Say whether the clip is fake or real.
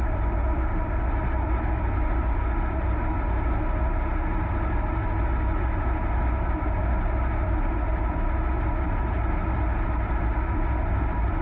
real